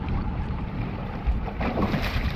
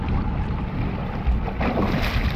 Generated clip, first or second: first